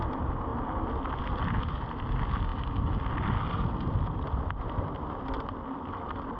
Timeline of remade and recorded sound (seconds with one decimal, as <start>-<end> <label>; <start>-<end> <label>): 0.0-6.4 recorded